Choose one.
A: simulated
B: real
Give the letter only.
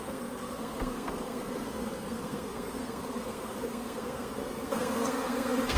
A